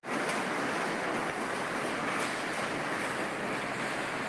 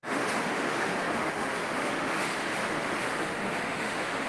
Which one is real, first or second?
first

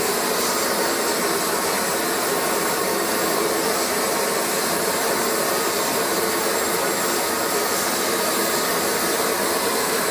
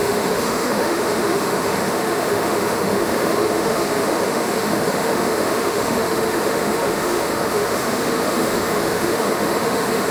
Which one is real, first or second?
first